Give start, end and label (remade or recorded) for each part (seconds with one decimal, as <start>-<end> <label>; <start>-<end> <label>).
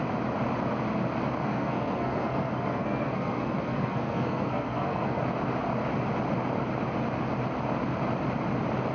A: 0.0-1.4 recorded; 1.4-5.2 remade; 5.2-8.9 recorded